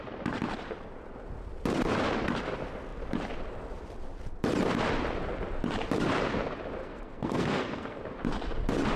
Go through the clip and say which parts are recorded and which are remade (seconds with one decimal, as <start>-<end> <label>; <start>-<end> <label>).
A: 0.0-6.8 recorded; 6.8-8.0 remade; 8.0-9.0 recorded